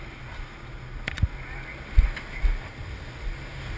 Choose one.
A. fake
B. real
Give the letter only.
B